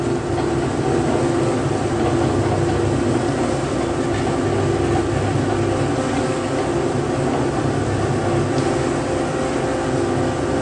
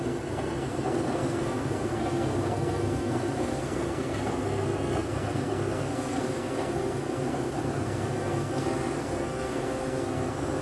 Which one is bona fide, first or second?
first